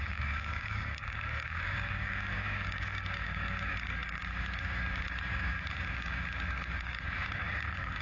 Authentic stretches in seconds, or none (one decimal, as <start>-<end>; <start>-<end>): none